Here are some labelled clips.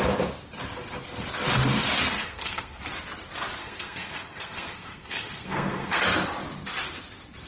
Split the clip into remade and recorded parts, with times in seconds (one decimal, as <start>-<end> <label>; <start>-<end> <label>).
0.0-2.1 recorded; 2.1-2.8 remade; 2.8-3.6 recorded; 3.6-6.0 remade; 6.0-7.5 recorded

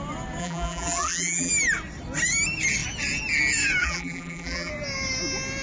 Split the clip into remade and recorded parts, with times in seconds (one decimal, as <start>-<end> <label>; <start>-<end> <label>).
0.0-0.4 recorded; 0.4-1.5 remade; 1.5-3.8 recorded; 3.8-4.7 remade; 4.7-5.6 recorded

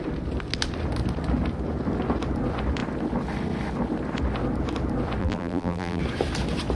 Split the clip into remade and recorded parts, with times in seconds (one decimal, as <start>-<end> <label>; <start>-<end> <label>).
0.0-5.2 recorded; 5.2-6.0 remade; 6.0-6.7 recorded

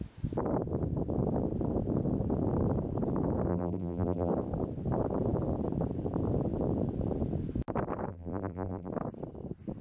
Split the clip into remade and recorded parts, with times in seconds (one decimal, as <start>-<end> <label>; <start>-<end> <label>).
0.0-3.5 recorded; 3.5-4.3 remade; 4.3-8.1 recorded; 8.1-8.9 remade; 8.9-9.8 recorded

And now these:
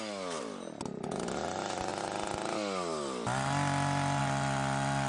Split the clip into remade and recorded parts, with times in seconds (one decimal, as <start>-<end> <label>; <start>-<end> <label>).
0.0-5.1 recorded